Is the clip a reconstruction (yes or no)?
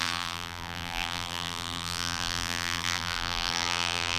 yes